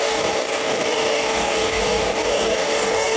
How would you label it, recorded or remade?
remade